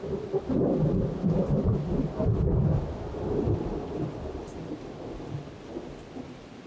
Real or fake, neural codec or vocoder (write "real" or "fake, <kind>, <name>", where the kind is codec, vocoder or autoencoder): real